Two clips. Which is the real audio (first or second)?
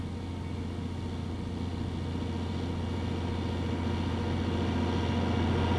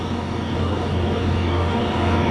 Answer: first